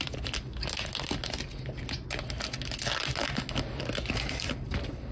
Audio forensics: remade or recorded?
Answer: recorded